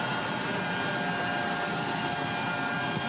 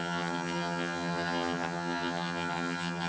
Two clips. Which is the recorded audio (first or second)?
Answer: first